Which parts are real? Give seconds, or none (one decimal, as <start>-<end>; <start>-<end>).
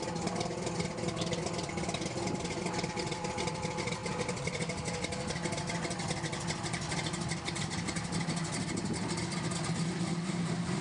0.0-10.8